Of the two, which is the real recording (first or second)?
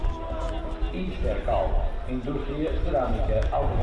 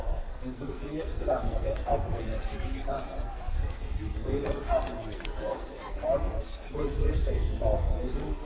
first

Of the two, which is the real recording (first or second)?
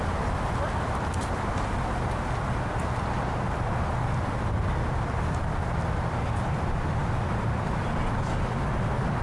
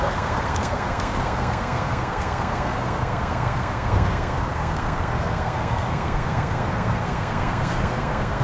first